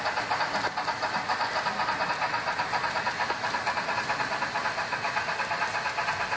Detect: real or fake real